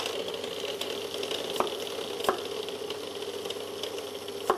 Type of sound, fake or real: real